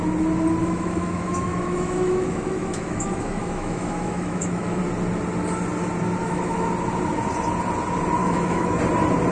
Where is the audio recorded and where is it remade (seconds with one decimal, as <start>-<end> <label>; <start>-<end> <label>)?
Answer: 0.0-0.6 recorded; 0.6-4.8 remade; 4.8-6.2 recorded; 6.2-6.7 remade; 6.7-8.2 recorded; 8.2-8.8 remade; 8.8-9.3 recorded